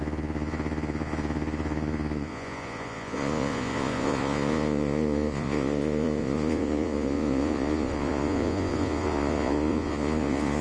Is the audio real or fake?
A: fake